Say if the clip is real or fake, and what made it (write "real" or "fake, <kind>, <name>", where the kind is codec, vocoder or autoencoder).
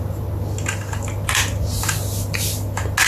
real